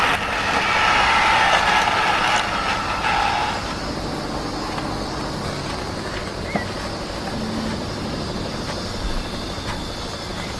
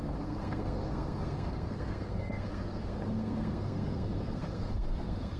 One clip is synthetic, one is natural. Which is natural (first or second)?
first